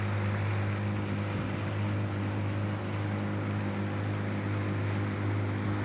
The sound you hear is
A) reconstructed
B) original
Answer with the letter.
B